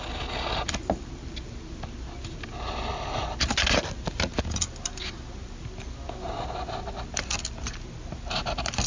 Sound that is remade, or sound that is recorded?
recorded